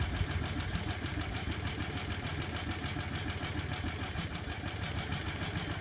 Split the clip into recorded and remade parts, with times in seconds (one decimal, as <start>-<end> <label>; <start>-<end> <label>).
0.0-2.3 remade; 2.3-3.6 recorded; 3.6-5.8 remade